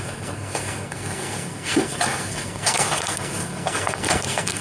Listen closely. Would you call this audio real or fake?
fake